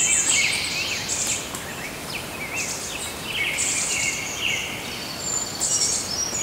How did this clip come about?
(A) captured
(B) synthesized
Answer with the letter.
A